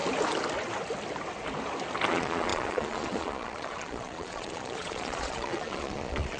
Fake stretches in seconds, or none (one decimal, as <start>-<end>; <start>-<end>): 2.1-6.4